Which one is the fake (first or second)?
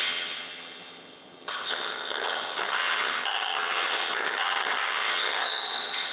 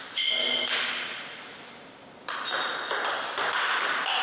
first